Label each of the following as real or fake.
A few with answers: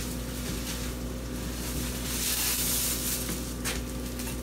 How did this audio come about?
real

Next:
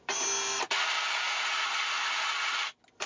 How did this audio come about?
real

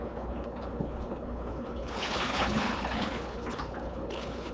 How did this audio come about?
fake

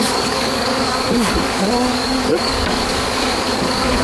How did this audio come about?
fake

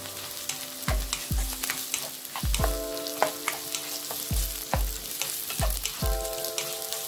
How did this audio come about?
real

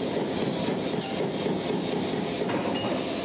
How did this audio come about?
real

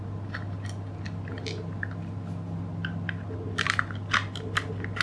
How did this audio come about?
real